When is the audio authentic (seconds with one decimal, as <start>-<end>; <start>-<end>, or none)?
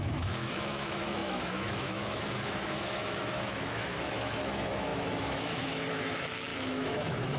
none